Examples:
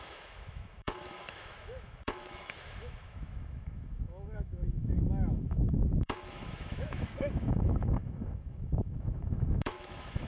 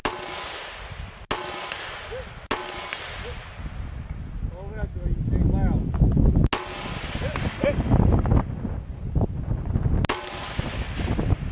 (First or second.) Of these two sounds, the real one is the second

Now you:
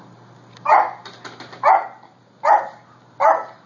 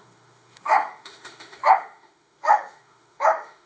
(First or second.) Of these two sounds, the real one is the first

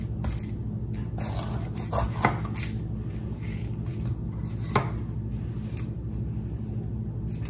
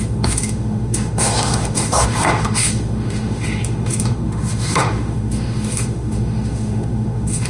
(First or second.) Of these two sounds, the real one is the first